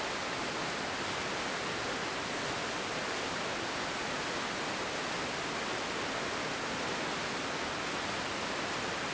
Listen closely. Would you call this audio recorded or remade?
recorded